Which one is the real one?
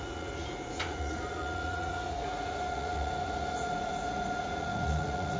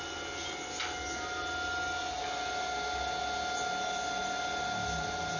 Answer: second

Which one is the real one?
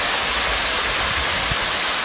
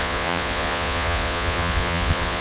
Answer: first